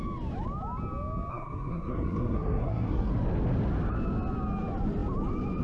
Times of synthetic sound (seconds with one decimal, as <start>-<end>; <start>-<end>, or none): 1.3-3.1